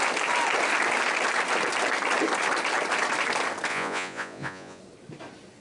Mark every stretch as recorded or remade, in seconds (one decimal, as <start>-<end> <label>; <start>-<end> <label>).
0.0-3.7 recorded; 3.7-4.8 remade; 4.8-5.6 recorded